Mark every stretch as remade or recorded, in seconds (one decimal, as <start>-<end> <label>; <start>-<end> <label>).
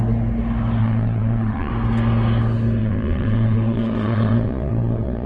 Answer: 0.0-0.8 recorded; 0.8-1.7 remade; 1.7-2.8 recorded; 2.8-5.3 remade